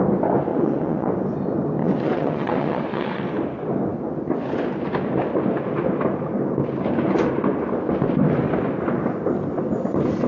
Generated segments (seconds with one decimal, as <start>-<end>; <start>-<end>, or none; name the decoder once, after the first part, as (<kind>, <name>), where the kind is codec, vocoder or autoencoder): 0.5-1.1 (vocoder, WaveNeXt); 1.8-3.2